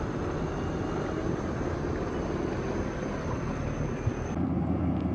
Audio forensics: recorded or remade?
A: recorded